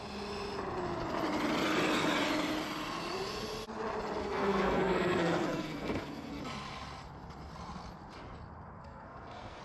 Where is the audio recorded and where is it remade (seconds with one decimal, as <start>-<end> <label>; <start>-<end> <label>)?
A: 0.0-4.2 recorded; 4.2-6.4 remade; 6.4-8.8 recorded; 8.8-9.6 remade